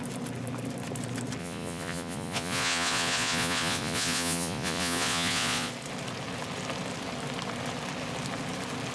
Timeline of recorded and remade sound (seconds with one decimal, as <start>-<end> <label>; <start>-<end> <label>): 0.0-1.4 recorded; 1.4-5.7 remade; 5.7-8.9 recorded